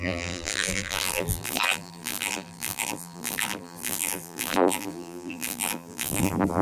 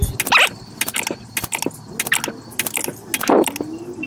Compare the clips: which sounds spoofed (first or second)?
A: first